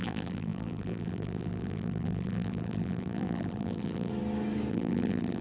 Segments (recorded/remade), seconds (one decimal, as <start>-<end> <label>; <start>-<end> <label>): 0.0-4.1 remade; 4.1-4.7 recorded; 4.7-5.4 remade